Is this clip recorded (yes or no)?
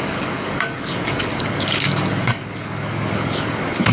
no